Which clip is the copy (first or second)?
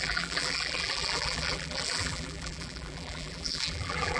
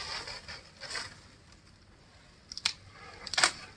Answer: first